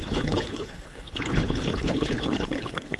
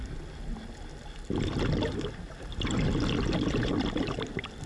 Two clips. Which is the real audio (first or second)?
second